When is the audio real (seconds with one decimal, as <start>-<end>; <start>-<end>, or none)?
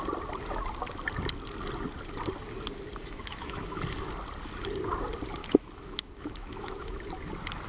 0.0-3.0; 3.8-5.4; 7.0-7.7